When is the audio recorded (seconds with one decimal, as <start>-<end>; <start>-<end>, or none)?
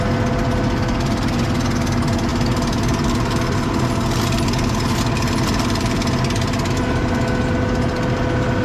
0.0-8.6